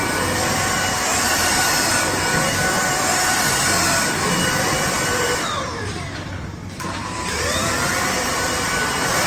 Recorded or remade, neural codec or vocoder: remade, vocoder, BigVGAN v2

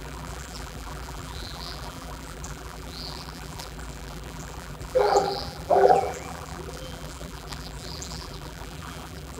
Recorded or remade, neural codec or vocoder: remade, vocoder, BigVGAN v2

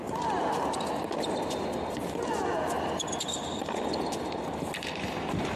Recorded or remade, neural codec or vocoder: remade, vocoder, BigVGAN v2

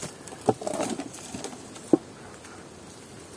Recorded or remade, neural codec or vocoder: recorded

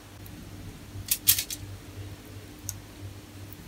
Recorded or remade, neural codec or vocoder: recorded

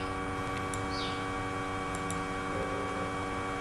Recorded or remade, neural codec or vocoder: recorded